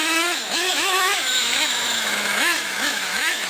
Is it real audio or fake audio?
fake